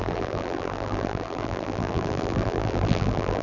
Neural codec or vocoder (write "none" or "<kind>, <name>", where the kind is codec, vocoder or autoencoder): vocoder, BigVGAN v2